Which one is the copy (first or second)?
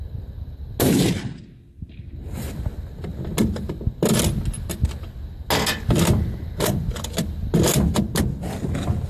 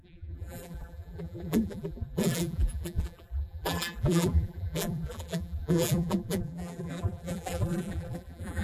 second